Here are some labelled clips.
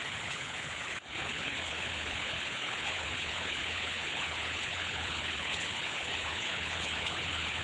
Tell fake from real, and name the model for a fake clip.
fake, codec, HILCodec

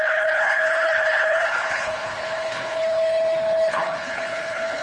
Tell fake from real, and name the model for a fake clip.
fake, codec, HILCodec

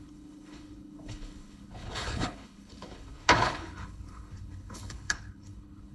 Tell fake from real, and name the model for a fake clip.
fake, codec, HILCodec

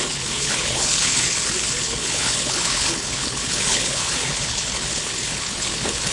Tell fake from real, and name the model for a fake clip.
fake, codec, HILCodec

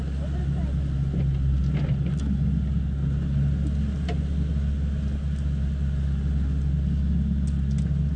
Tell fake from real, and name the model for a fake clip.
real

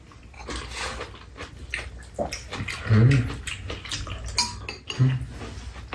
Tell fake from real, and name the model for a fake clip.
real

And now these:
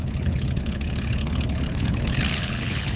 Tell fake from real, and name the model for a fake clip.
fake, codec, HILCodec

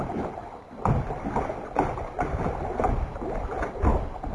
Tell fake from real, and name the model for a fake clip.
real